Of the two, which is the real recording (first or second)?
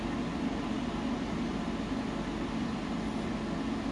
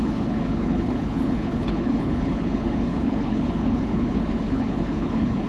first